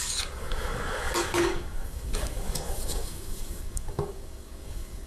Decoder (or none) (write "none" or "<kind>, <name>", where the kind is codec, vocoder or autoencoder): codec, DAC